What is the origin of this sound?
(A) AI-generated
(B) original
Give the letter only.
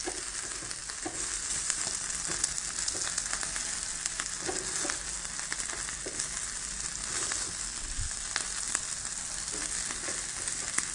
B